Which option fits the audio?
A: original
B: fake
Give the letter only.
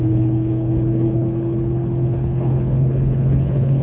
B